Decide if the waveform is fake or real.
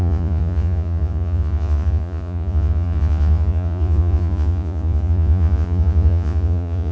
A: fake